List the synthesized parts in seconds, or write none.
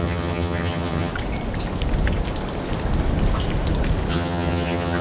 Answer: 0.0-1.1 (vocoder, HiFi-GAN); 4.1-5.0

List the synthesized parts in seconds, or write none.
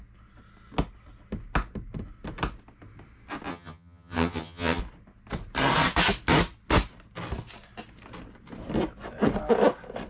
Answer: 3.5-4.8 (vocoder, HiFi-GAN)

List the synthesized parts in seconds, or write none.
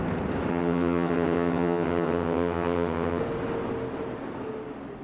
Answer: 0.5-3.2 (vocoder, HiFi-GAN)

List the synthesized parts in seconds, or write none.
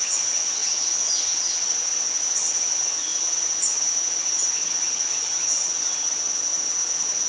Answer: 0.0-7.3 (vocoder, HiFi-GAN)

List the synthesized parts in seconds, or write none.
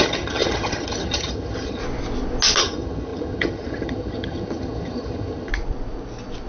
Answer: 0.0-1.8 (vocoder, HiFi-GAN); 2.6-5.5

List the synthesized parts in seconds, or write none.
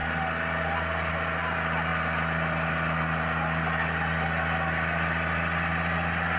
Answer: none